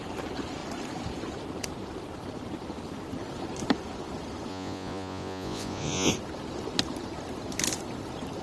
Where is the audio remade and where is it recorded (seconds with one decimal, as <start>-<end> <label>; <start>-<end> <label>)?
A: 0.0-4.5 recorded; 4.5-6.1 remade; 6.1-8.4 recorded